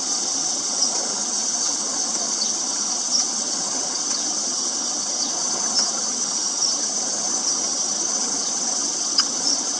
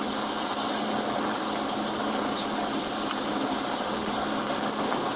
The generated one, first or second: first